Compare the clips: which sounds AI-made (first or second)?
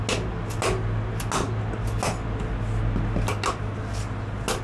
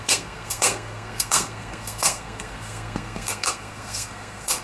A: second